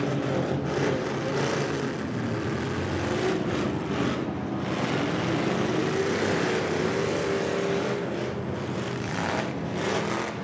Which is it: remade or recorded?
recorded